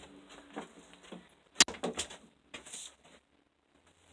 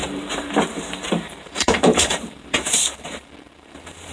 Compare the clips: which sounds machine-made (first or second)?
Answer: second